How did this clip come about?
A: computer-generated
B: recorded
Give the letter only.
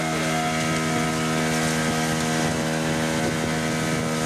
B